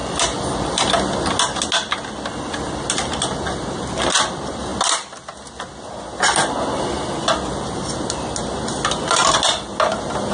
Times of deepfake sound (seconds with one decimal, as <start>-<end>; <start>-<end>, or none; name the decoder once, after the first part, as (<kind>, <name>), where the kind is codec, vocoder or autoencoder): none